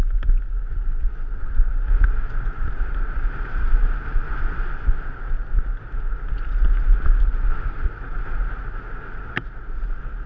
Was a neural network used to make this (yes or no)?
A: no